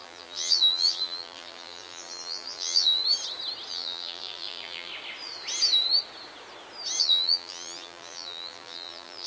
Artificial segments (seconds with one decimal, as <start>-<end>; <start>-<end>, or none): 0.0-3.0; 3.7-4.9; 7.0-9.3